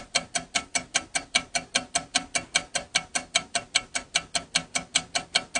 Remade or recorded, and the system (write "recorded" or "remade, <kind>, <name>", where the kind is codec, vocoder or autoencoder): recorded